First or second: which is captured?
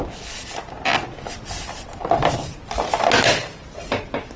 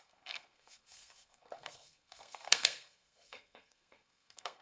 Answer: first